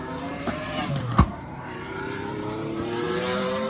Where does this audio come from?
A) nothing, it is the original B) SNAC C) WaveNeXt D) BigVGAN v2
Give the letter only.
D